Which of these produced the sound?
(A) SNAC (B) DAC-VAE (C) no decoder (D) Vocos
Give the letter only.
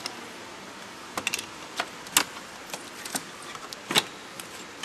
C